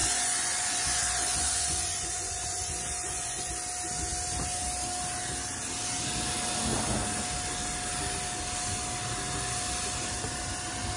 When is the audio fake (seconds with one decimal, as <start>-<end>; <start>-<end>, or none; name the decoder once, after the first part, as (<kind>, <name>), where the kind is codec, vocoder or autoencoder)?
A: 0.0-3.5 (vocoder, Vocos)